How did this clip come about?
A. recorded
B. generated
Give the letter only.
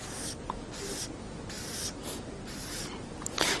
A